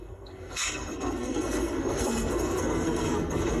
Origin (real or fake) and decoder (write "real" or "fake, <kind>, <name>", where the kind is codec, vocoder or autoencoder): fake, codec, SNAC